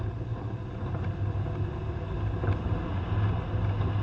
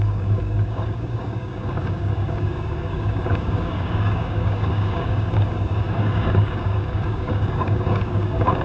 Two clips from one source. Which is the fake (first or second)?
second